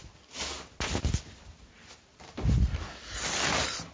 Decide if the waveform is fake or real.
real